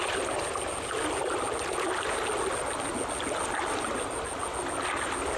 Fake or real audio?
real